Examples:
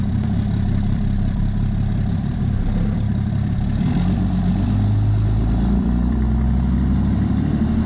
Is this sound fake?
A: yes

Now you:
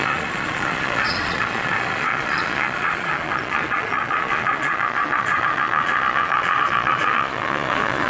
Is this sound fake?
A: yes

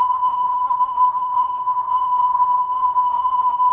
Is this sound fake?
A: yes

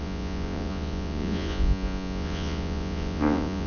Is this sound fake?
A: yes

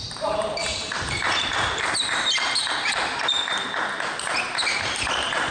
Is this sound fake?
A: yes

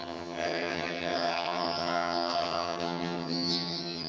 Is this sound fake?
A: yes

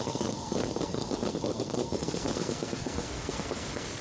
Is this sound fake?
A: yes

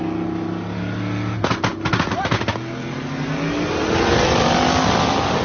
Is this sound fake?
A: no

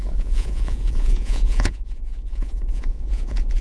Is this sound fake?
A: yes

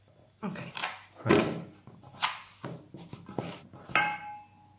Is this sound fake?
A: no